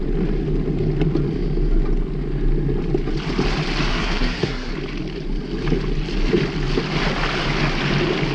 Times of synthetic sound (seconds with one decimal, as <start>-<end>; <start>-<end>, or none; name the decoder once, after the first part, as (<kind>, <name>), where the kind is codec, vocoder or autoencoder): 3.9-4.7 (codec, SNAC)